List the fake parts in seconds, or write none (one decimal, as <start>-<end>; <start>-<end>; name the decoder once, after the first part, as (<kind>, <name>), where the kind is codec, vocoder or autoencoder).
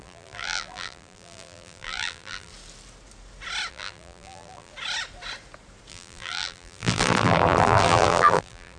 0.0-2.5 (vocoder, BigVGAN v2); 3.7-4.7; 5.9-8.8